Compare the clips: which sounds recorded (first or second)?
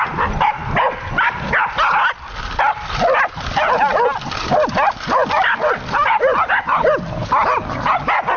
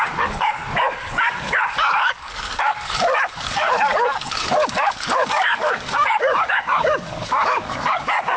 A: first